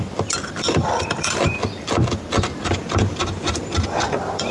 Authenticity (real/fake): fake